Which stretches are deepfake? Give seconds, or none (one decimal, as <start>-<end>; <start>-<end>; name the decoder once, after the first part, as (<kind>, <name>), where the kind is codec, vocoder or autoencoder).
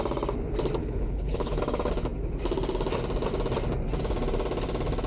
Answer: 0.8-1.6 (codec, HILCodec)